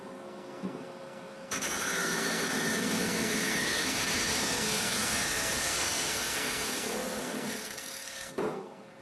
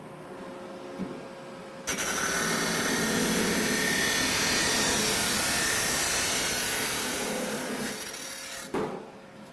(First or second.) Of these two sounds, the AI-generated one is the first